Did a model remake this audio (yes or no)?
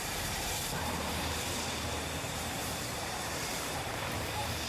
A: yes